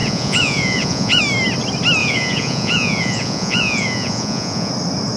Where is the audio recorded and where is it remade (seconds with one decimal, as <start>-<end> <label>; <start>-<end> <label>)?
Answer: 0.0-1.2 remade; 1.2-2.0 recorded; 2.0-4.7 remade; 4.7-5.2 recorded

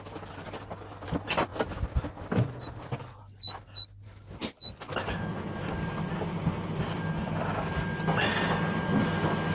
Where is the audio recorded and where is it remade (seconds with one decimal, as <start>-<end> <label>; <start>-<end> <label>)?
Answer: 0.0-9.5 recorded

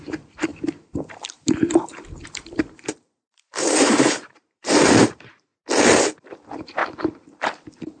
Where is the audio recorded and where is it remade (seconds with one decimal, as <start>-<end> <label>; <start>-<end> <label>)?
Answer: 0.0-5.5 remade; 5.5-6.3 recorded; 6.3-6.8 remade; 6.8-8.0 recorded

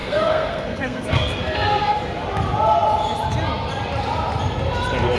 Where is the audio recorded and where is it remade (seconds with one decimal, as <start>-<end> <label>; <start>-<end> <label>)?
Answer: 0.0-2.0 remade; 2.0-5.2 recorded

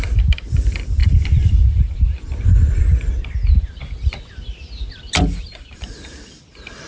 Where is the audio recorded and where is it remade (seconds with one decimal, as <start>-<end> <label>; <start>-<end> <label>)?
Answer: 0.0-2.9 remade; 2.9-5.4 recorded; 5.4-6.9 remade

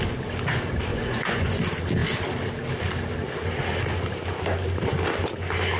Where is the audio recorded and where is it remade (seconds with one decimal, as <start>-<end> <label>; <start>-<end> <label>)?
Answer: 0.0-0.9 recorded; 0.9-1.6 remade; 1.6-5.8 recorded

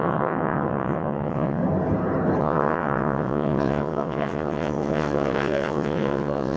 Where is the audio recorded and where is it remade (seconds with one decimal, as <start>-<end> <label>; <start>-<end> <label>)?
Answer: 0.0-1.6 remade; 1.6-2.4 recorded; 2.4-6.6 remade

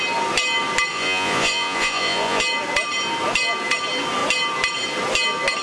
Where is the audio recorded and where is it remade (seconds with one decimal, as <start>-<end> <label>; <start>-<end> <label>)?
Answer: 0.0-0.9 recorded; 0.9-2.4 remade; 2.4-5.6 recorded